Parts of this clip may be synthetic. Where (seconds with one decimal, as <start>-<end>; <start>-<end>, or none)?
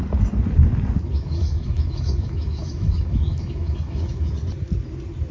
1.1-4.3